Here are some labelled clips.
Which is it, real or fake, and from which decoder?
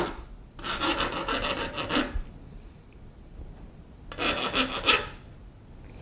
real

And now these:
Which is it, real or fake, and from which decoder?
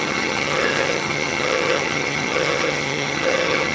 fake, vocoder, HiFi-GAN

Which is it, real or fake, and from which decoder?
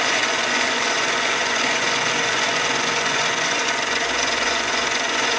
fake, vocoder, Vocos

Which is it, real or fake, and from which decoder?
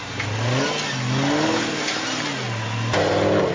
real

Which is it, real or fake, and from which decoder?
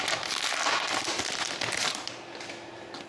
real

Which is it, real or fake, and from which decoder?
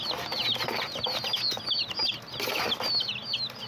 real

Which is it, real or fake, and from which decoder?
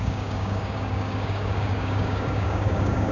fake, codec, DAC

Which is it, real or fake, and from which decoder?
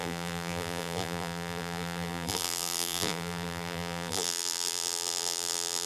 fake, vocoder, BigVGAN v2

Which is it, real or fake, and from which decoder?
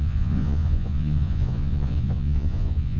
fake, vocoder, Vocos